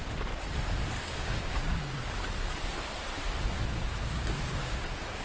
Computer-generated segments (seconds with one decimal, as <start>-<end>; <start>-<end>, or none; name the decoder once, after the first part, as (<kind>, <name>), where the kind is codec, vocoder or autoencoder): 1.0-1.8 (codec, DAC); 3.9-5.2